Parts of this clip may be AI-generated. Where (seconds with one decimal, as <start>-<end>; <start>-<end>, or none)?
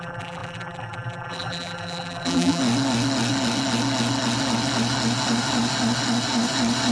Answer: 0.0-2.6